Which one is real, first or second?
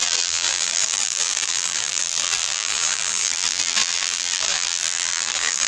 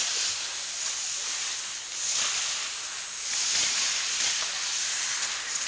second